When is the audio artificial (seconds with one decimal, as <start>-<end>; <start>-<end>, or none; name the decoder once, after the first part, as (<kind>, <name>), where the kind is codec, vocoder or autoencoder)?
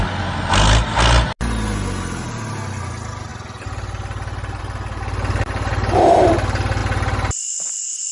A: none